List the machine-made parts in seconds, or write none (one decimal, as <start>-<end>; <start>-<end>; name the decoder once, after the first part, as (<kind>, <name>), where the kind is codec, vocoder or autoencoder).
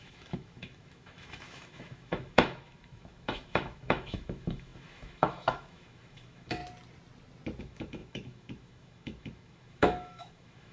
0.0-6.6 (autoencoder, DAC-VAE); 7.6-10.7